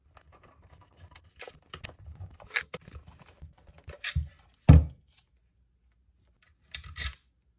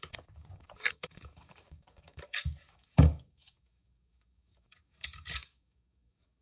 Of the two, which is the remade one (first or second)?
second